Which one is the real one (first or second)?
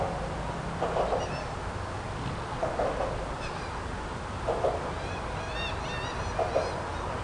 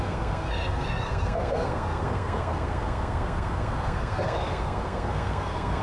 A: first